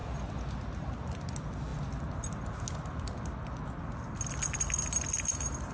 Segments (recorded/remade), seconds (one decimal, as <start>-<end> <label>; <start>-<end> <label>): 0.0-5.7 recorded